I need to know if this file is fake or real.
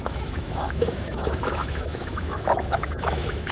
fake